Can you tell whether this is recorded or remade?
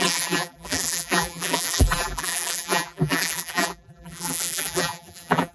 remade